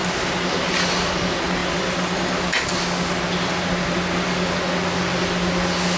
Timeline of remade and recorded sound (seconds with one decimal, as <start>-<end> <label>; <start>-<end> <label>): 0.0-6.0 recorded